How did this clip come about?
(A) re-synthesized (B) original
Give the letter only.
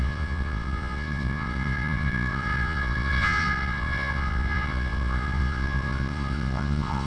A